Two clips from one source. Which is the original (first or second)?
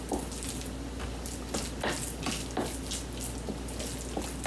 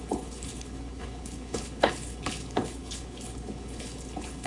first